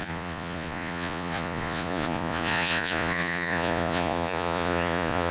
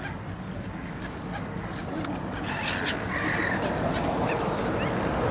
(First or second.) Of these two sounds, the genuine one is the second